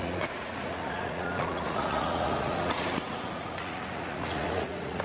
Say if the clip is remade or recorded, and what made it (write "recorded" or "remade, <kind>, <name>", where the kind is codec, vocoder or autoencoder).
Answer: remade, vocoder, Vocos